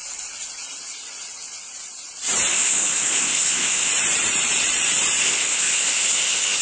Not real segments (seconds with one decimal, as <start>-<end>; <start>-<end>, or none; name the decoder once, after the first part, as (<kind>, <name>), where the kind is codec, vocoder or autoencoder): 2.5-3.9 (codec, ZipCodec); 5.2-6.6